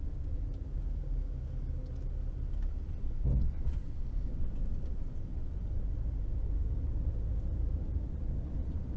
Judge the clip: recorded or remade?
recorded